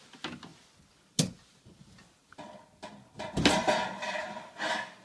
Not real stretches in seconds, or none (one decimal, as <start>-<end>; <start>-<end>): none